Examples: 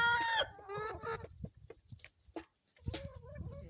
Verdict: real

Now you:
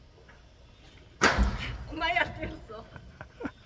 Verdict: real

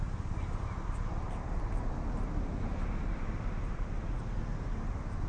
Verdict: real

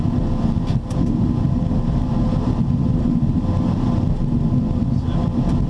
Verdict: real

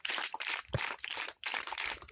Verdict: fake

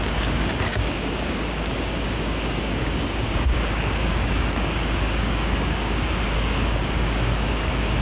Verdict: fake